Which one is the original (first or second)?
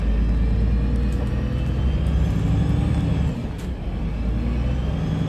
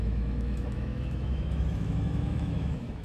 first